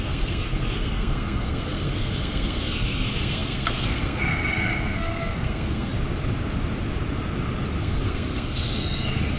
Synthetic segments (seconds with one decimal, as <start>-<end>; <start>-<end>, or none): 0.0-5.9; 7.8-9.4